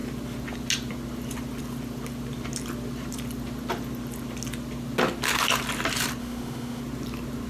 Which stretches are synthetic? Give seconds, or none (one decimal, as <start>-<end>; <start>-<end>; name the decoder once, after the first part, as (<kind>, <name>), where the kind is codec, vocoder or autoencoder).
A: 6.2-6.8 (autoencoder, DAC-VAE)